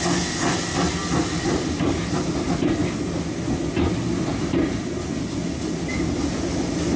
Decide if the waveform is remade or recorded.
recorded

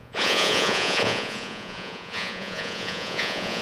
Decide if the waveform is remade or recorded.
remade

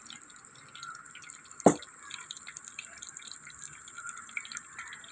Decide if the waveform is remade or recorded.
recorded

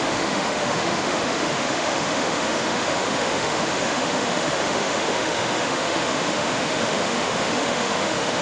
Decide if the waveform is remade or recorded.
remade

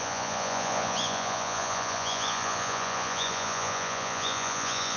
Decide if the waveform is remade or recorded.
remade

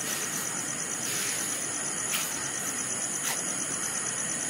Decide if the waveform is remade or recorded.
recorded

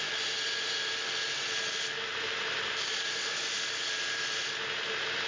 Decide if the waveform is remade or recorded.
recorded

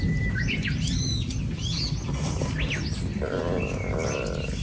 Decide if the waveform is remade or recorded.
remade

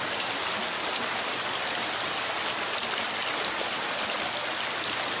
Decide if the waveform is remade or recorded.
recorded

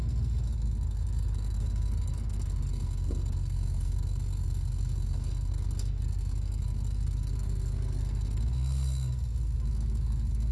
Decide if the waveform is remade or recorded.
remade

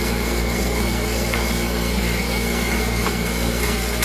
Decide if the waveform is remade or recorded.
remade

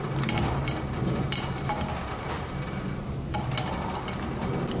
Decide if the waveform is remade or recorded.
recorded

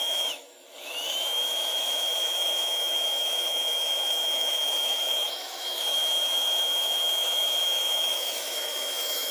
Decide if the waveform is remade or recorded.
remade